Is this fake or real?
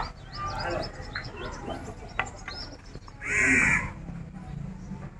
real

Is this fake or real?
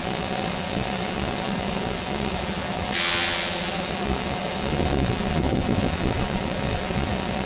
fake